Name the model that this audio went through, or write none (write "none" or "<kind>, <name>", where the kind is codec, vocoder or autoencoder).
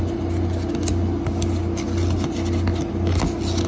none